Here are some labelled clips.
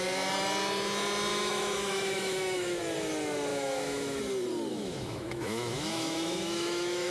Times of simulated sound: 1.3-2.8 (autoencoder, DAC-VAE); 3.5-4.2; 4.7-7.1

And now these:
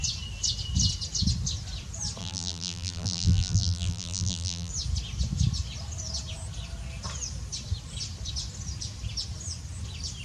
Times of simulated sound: 2.2-4.7 (vocoder, BigVGAN v2)

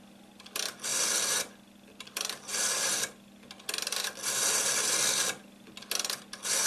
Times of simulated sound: none

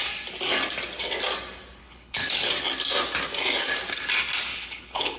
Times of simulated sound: 1.8-2.5 (codec, HILCodec); 4.5-5.2